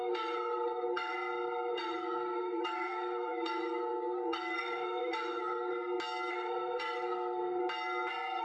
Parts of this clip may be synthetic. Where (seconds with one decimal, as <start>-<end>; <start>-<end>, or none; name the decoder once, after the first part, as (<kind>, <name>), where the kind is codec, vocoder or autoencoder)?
0.0-1.1 (codec, SNAC); 1.7-5.7; 6.3-7.6

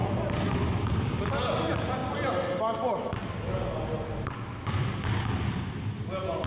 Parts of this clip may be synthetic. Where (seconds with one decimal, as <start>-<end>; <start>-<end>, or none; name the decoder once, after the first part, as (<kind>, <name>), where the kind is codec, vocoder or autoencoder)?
none